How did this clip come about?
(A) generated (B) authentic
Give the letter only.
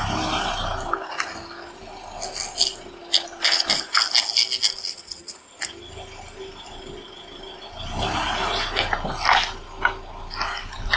B